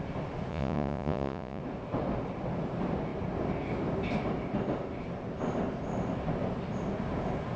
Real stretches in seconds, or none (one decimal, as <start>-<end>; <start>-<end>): 0.0-0.5; 1.6-7.6

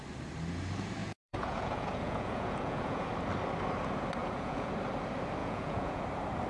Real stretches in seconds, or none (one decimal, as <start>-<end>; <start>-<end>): 0.0-1.0; 3.1-4.2; 4.7-5.4; 6.0-6.5

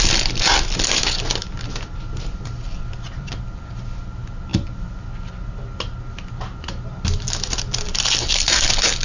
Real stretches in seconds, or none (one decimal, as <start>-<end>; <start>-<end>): 0.0-9.0